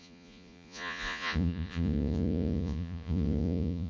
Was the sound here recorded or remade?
remade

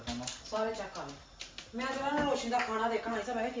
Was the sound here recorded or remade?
recorded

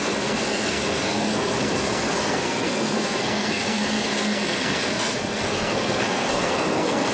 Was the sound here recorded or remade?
remade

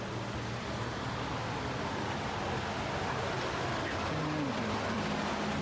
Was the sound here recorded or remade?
recorded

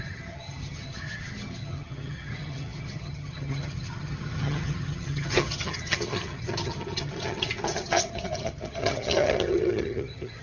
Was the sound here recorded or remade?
remade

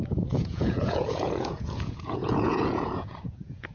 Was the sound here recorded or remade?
remade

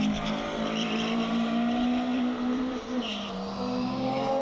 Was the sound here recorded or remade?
remade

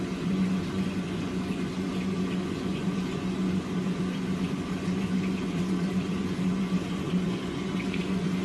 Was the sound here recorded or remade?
remade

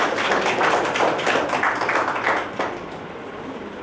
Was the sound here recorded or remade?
recorded